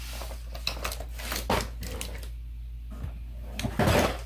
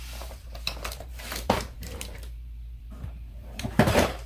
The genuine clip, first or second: first